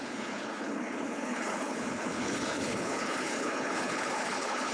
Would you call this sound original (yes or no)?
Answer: no